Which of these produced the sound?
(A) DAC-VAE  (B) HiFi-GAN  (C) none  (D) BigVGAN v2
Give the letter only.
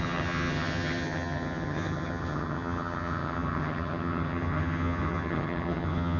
B